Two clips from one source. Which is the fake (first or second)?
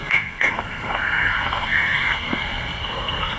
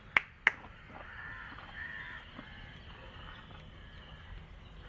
first